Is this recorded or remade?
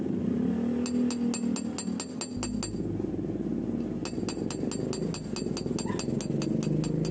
recorded